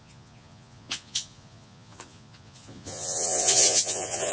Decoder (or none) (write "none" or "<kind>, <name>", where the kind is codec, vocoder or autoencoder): vocoder, Vocos